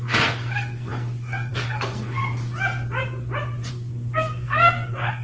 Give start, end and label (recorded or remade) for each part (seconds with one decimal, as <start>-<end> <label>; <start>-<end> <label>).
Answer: 0.0-2.2 remade; 2.2-3.7 recorded; 3.7-5.2 remade